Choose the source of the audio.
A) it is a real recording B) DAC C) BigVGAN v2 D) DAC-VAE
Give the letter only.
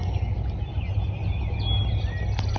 A